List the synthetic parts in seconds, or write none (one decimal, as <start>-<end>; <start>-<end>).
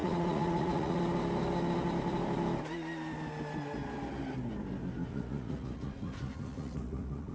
0.0-1.0; 5.1-7.3